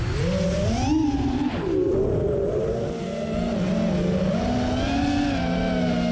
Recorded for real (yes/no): yes